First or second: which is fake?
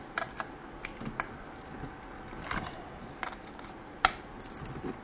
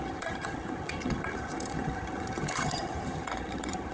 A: second